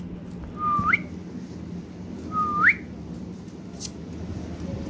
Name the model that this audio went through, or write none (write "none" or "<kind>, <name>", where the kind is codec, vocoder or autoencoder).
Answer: none